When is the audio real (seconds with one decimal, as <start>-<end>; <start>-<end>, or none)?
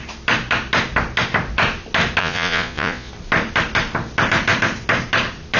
0.0-2.2; 3.1-5.6